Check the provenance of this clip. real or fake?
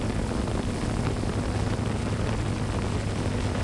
real